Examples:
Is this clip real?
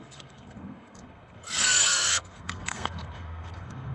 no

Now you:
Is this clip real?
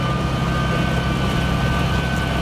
yes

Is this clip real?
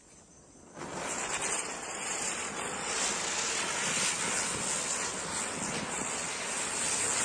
yes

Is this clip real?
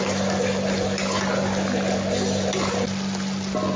yes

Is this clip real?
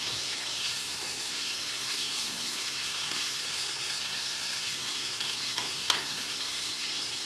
no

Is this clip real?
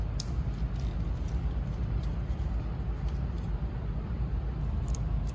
yes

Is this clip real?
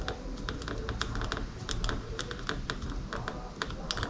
yes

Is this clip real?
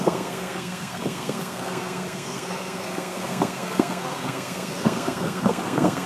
no